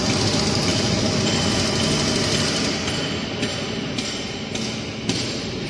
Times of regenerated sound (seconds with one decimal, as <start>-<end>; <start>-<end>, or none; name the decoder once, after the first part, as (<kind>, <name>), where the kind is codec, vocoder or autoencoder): none